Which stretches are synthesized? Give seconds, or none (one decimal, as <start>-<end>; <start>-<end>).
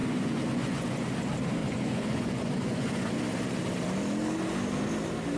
0.0-1.1; 1.6-3.1